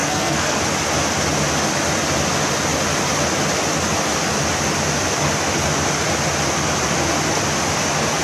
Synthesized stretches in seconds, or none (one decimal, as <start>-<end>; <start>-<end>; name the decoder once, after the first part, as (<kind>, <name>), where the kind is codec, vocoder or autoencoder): 0.0-0.6 (codec, SNAC)